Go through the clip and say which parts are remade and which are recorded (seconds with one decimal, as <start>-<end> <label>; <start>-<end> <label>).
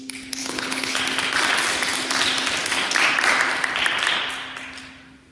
0.0-0.4 recorded; 0.4-1.0 remade; 1.0-5.3 recorded